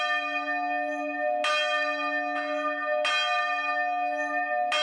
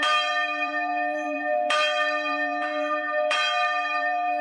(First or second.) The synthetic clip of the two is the second